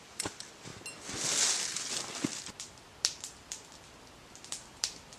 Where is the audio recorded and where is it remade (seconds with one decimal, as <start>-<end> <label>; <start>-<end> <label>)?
0.0-5.2 recorded